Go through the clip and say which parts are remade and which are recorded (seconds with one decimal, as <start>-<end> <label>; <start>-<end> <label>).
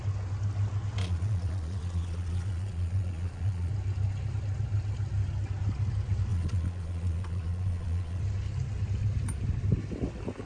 0.0-1.0 recorded; 1.0-3.7 remade; 3.7-6.3 recorded; 6.3-8.2 remade; 8.2-10.5 recorded